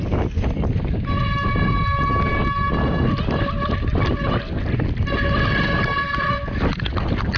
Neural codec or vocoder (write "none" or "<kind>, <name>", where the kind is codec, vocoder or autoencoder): none